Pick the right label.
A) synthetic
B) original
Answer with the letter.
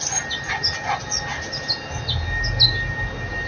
B